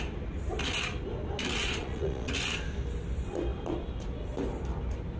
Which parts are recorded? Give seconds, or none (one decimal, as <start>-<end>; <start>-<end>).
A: 0.0-1.6; 2.3-5.2